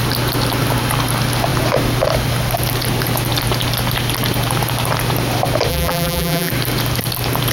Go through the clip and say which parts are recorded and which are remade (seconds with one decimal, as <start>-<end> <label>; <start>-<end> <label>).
0.0-5.7 recorded; 5.7-6.5 remade; 6.5-7.5 recorded